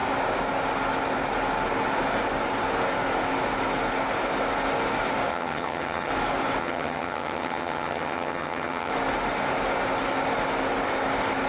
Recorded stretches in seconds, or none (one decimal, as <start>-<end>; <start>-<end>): 0.0-5.3; 6.1-6.6; 8.9-11.5